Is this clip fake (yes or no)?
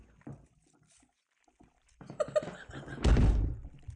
no